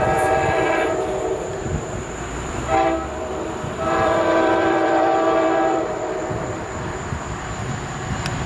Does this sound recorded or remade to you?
remade